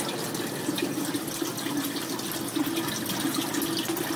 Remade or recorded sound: recorded